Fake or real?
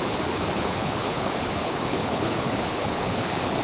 fake